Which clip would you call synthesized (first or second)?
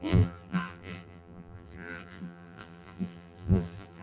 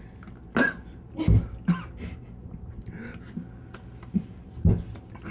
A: first